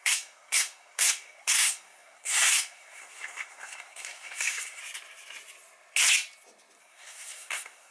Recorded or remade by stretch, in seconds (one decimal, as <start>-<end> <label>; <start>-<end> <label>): 0.0-4.8 remade; 4.8-6.8 recorded; 6.8-7.9 remade